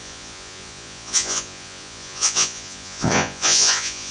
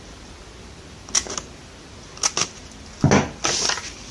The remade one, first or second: first